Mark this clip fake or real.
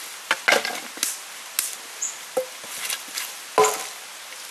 real